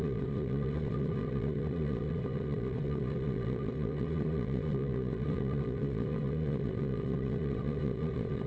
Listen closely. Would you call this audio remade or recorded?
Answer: remade